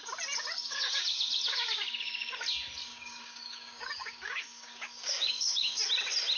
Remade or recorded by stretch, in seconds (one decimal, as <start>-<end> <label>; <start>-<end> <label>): 0.0-0.6 recorded; 0.6-2.3 remade; 2.3-2.8 recorded; 2.8-5.8 remade; 5.8-6.4 recorded